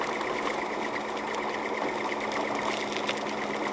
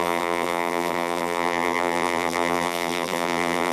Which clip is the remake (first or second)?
second